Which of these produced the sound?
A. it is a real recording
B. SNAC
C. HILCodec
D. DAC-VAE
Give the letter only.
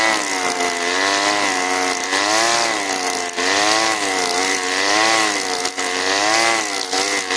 A